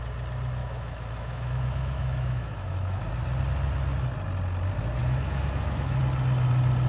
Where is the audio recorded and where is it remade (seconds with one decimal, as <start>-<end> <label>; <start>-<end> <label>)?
0.0-0.6 recorded; 0.6-3.1 remade; 3.1-5.0 recorded; 5.0-6.0 remade; 6.0-6.9 recorded